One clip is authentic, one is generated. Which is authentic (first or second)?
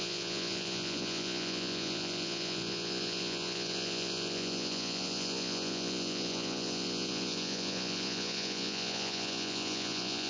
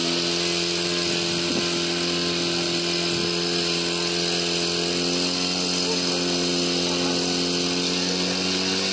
second